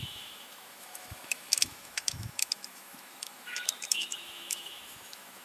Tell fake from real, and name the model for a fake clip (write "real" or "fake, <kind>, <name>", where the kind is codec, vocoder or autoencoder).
fake, autoencoder, DAC-VAE